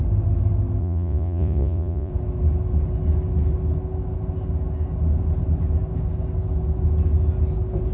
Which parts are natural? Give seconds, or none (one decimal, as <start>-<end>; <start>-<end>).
0.0-0.8; 2.1-7.9